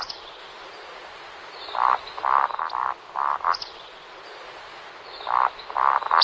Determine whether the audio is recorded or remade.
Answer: recorded